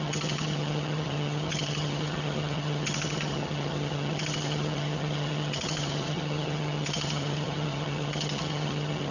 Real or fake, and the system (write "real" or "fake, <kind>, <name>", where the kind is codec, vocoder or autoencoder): fake, vocoder, HiFi-GAN